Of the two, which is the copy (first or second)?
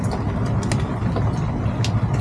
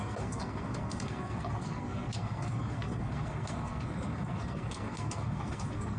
second